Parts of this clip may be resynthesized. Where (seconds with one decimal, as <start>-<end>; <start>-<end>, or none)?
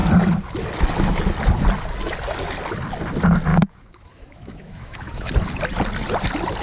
3.5-5.3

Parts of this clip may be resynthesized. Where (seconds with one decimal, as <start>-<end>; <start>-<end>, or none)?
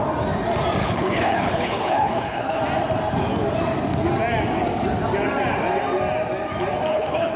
0.8-2.6; 6.9-7.4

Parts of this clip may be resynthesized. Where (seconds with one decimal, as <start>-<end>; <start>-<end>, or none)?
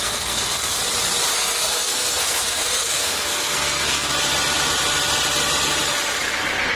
0.0-0.8; 1.3-4.1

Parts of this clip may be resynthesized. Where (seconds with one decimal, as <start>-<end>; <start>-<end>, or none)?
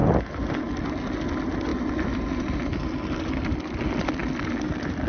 none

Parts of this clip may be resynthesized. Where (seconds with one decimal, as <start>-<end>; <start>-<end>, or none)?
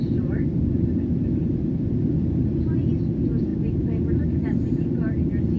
0.0-3.5; 4.4-5.6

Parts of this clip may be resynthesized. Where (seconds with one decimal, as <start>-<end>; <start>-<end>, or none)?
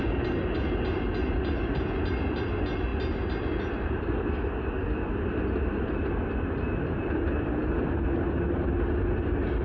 none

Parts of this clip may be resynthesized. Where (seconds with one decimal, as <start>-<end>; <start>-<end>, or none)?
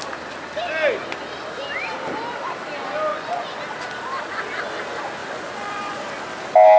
3.1-3.6; 5.2-6.0